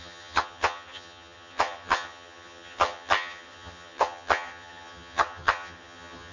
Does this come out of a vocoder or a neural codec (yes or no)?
yes